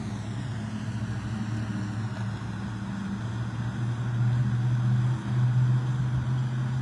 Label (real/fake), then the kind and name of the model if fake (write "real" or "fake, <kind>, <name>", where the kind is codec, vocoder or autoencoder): real